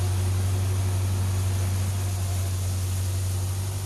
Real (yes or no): yes